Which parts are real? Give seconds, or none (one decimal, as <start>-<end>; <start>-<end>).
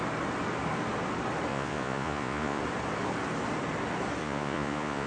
0.0-1.5; 2.6-4.2